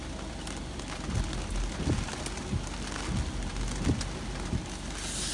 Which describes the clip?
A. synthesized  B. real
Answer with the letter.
B